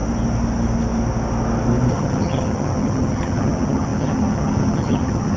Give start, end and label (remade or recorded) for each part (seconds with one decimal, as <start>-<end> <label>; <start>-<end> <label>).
0.0-1.9 recorded; 1.9-5.4 remade